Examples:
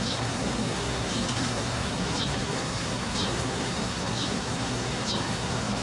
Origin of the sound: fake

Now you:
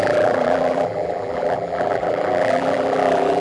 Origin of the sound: fake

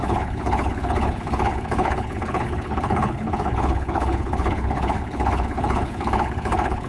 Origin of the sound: fake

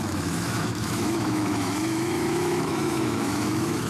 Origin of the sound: fake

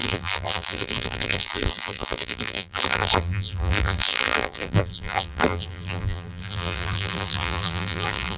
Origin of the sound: fake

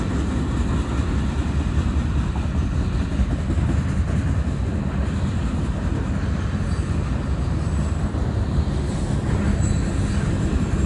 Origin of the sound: real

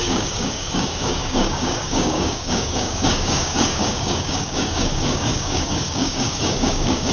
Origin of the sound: fake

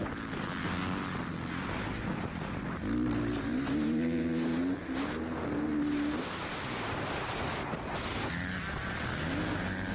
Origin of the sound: real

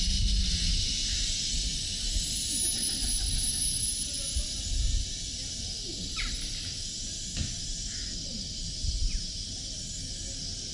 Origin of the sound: real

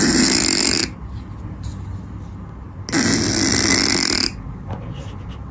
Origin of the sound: real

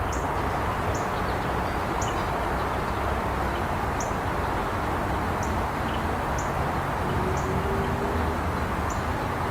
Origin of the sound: real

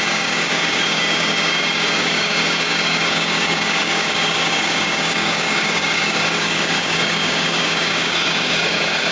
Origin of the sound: fake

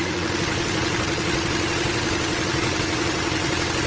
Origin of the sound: fake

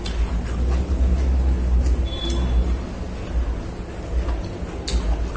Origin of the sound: real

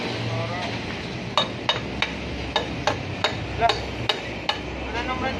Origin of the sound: real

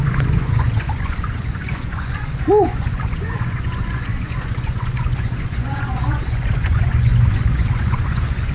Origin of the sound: fake